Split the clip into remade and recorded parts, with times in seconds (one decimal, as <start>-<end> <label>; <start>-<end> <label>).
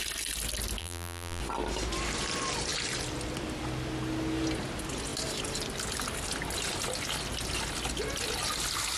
0.0-0.8 recorded; 0.8-1.4 remade; 1.4-9.0 recorded